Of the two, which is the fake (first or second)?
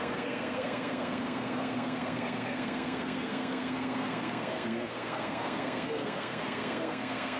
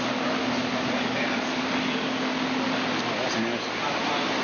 first